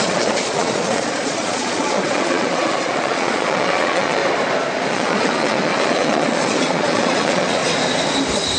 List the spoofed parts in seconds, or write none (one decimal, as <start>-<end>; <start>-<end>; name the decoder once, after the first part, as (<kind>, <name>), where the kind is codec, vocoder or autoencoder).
0.0-4.2 (vocoder, Vocos); 4.9-7.6